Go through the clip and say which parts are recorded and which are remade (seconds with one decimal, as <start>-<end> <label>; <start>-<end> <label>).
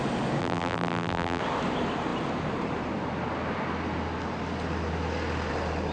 0.0-0.4 recorded; 0.4-1.4 remade; 1.4-5.9 recorded